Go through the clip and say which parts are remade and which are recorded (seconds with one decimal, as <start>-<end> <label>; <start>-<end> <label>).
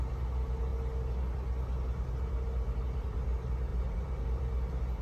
0.0-3.7 recorded; 3.7-4.6 remade; 4.6-5.0 recorded